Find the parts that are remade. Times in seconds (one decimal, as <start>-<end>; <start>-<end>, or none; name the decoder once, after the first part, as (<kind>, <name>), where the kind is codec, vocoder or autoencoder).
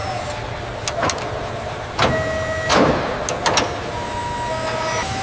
none